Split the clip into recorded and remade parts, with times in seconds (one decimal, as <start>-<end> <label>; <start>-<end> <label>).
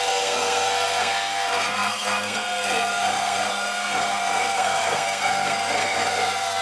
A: 0.0-6.6 remade